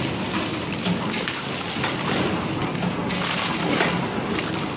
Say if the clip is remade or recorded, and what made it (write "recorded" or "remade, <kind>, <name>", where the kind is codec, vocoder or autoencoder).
recorded